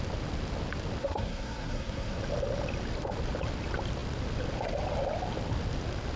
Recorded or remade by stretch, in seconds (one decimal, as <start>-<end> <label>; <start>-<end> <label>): 0.0-1.0 recorded; 1.0-2.2 remade; 2.2-6.2 recorded